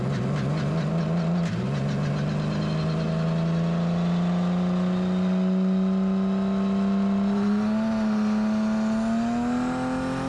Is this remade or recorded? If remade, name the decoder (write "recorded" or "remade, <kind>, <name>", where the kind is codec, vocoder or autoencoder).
recorded